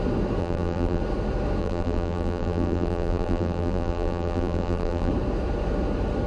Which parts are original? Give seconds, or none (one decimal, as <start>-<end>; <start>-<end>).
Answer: 0.0-0.4; 1.0-1.6; 5.1-6.3